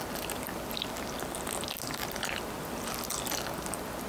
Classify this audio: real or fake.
real